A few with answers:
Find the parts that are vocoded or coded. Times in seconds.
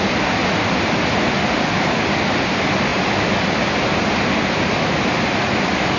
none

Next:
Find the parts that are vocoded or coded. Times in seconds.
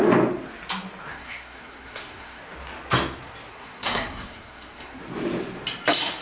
1.1-2.4 (codec, SNAC); 3.5-5.0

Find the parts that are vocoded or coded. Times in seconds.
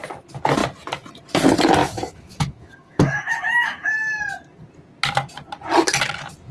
1.8-4.2 (autoencoder, DAC-VAE)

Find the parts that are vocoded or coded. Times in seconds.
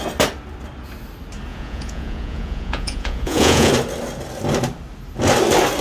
1.5-3.7 (vocoder, Vocos)